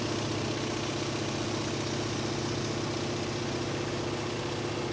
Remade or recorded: recorded